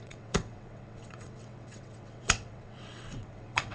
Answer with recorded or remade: remade